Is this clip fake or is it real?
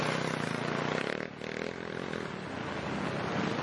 real